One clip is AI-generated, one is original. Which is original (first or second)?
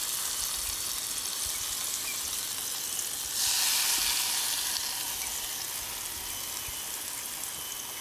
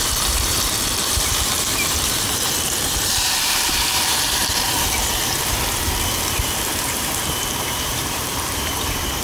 first